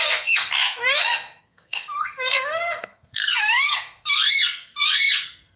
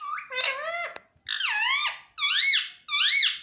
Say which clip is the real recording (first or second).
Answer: second